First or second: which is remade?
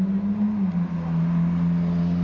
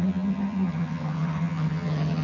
second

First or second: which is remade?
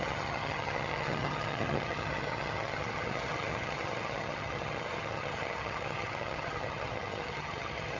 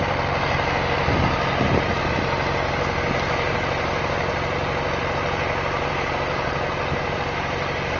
first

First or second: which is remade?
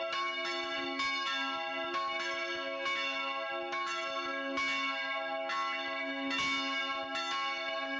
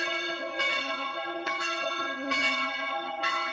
second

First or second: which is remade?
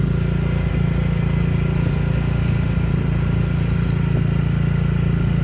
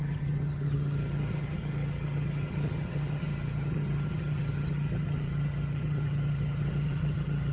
second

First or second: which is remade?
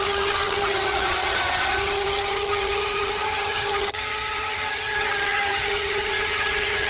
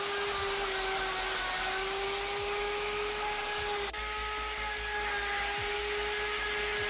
first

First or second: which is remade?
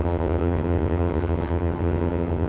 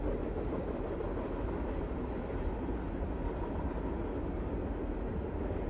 first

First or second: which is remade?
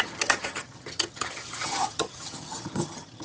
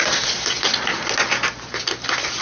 first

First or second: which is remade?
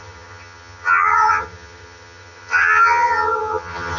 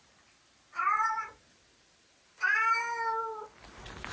first